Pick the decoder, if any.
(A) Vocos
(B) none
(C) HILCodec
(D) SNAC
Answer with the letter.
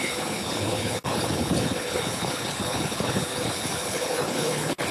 C